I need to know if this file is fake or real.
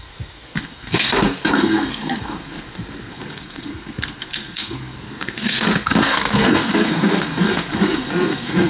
fake